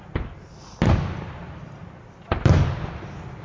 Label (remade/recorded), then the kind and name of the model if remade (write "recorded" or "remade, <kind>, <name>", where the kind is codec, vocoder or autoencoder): recorded